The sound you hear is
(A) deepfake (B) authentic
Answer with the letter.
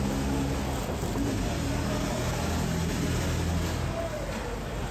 B